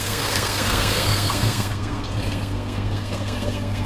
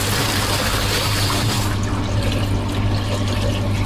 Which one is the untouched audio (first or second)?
second